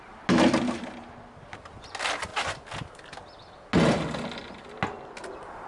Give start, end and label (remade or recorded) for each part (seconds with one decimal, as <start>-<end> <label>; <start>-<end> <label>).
0.0-5.7 recorded